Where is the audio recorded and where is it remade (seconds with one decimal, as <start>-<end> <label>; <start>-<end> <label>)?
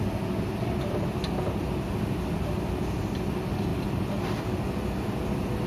0.0-3.7 recorded; 3.7-4.4 remade; 4.4-5.7 recorded